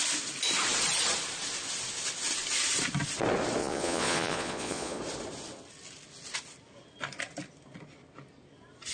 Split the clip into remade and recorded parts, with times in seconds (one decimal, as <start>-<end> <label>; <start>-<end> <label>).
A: 0.0-3.6 recorded; 3.6-5.0 remade; 5.0-8.9 recorded